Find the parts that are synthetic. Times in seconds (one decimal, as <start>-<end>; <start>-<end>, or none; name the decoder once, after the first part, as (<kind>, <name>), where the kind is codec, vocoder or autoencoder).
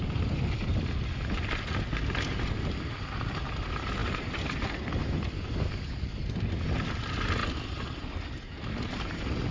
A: none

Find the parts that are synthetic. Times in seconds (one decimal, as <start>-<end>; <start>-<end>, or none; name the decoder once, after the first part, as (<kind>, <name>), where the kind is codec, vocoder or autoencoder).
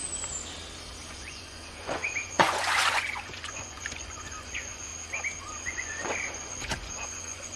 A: 1.1-4.9 (vocoder, Vocos); 5.4-7.6